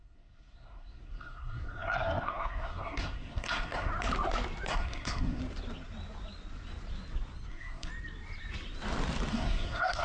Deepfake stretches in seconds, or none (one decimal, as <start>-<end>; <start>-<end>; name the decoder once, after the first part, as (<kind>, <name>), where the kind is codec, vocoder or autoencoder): 0.0-3.9 (codec, SNAC); 4.7-5.4; 7.5-7.9; 9.3-10.0